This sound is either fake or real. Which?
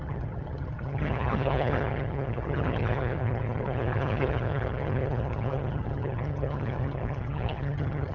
fake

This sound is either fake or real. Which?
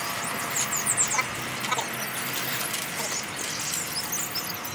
real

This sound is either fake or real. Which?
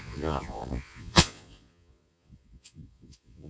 fake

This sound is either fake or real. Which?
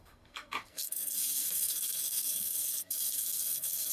fake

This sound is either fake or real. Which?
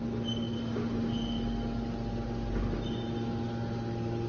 real